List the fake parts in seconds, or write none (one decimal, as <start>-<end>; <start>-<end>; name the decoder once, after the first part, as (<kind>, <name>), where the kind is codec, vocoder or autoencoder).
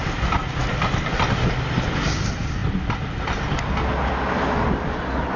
none